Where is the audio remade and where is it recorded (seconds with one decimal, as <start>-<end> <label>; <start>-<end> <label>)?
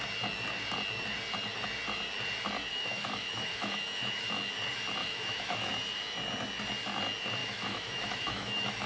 0.0-2.7 recorded; 2.7-4.5 remade; 4.5-5.0 recorded; 5.0-5.7 remade; 5.7-7.4 recorded; 7.4-8.9 remade